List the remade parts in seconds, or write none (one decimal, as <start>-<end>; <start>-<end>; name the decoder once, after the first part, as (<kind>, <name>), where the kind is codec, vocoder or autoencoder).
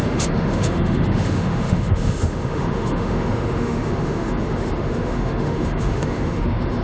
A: 0.0-6.8 (autoencoder, DAC-VAE)